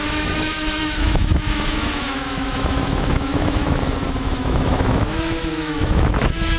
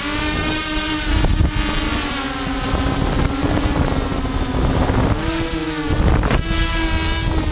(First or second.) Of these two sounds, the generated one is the first